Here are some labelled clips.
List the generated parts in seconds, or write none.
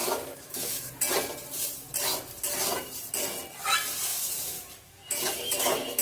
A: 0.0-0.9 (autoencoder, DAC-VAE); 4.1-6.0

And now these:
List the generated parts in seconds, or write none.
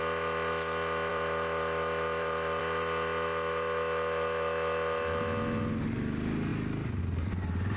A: 1.1-2.6 (vocoder, BigVGAN v2); 6.5-7.0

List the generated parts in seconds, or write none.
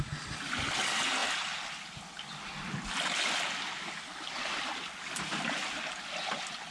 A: none